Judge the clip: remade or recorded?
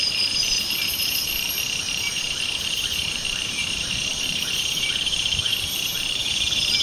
remade